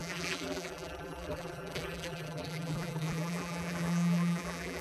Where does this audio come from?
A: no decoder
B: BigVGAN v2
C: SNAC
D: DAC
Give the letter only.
B